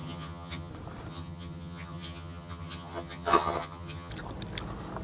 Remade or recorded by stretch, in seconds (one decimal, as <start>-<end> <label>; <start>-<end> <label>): 0.0-0.7 remade; 0.7-1.1 recorded; 1.1-4.1 remade; 4.1-5.0 recorded